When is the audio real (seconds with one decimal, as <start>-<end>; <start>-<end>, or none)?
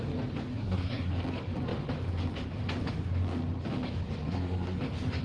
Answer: 0.0-0.5; 1.1-4.2; 4.8-5.2